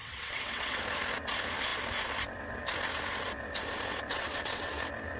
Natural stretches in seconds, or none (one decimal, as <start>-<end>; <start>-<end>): 0.8-4.1; 4.7-5.2